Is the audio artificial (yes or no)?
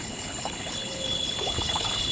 yes